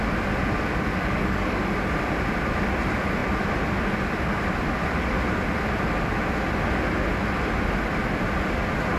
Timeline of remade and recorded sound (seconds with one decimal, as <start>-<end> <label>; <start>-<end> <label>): 0.0-0.9 recorded; 0.9-1.6 remade; 1.6-9.0 recorded